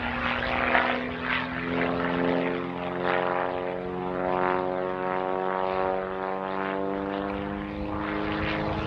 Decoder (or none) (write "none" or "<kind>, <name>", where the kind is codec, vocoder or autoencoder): none